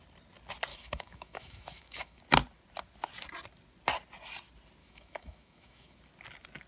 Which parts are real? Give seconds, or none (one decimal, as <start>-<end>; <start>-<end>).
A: 0.0-0.7; 2.2-4.8; 6.0-6.7